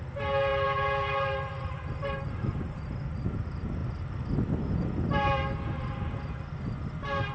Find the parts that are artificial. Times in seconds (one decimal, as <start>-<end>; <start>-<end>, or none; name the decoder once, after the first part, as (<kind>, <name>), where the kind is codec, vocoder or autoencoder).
0.5-3.1 (vocoder, BigVGAN v2)